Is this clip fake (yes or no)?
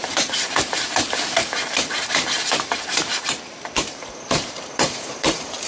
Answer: yes